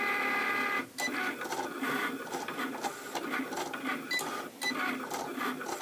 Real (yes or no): yes